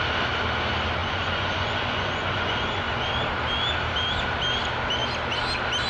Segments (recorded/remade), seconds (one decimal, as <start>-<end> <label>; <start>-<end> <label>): 0.0-1.0 recorded; 1.0-3.1 remade; 3.1-5.9 recorded